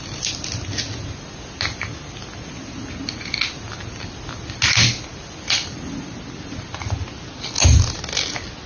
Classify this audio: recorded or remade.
recorded